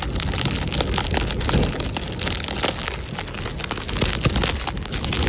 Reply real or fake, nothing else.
real